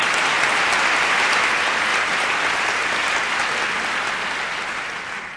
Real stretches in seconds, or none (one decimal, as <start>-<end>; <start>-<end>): 0.0-5.4